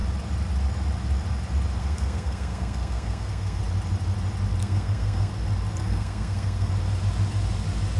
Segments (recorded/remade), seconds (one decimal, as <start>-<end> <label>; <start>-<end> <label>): 0.0-1.8 recorded; 1.8-3.6 remade; 3.6-4.6 recorded; 4.6-5.3 remade; 5.3-5.8 recorded; 5.8-6.7 remade; 6.7-8.0 recorded